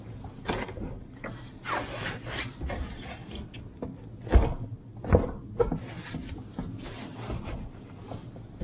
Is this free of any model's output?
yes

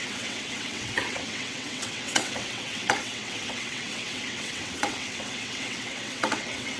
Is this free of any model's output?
no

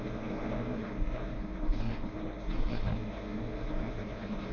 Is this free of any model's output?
no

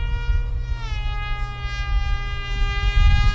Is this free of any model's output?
yes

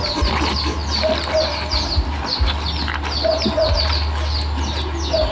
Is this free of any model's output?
yes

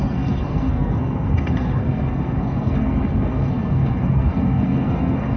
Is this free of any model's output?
no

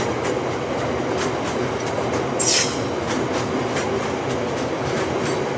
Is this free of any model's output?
yes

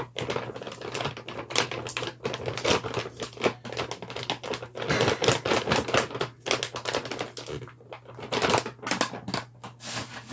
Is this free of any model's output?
yes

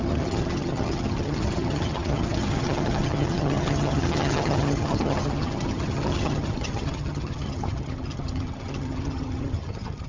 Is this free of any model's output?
no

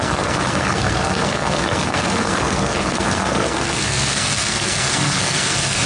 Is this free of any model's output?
no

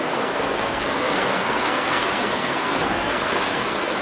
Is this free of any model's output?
no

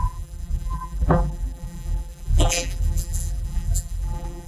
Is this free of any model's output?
no